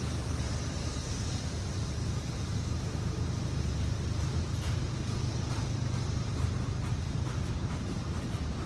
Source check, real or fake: fake